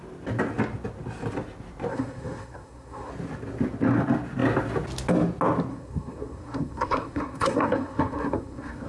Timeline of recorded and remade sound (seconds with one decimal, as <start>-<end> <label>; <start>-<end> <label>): 0.0-1.9 recorded; 1.9-3.1 remade; 3.1-5.7 recorded; 5.7-8.9 remade